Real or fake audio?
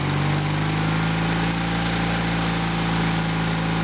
real